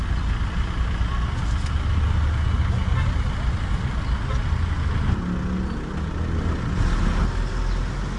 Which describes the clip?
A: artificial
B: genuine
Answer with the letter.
B